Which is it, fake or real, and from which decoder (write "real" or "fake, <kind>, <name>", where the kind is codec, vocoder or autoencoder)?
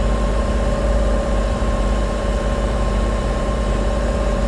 fake, vocoder, BigVGAN v2